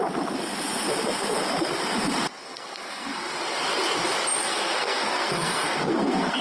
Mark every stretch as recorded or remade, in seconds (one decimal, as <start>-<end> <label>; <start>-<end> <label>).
0.0-2.4 recorded; 2.4-3.3 remade; 3.3-4.4 recorded; 4.4-6.4 remade